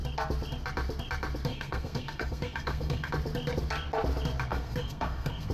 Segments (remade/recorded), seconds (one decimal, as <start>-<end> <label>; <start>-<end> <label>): 0.0-1.5 recorded; 1.5-3.1 remade; 3.1-4.5 recorded; 4.5-5.5 remade